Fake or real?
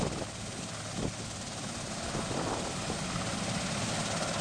real